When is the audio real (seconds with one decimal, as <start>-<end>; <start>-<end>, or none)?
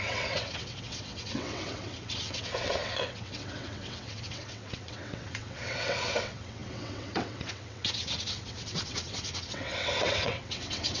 none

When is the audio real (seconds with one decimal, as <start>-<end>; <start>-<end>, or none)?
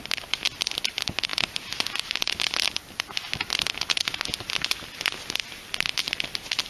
0.0-6.7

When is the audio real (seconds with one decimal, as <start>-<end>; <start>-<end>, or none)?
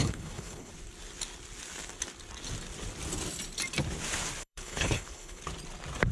0.7-4.4; 5.4-6.1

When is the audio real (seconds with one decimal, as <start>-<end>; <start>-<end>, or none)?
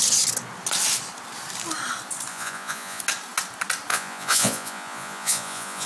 0.0-2.3; 3.0-3.9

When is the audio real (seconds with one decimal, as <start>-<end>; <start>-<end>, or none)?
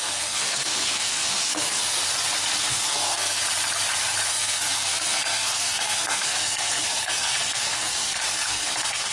2.0-2.6; 3.4-4.3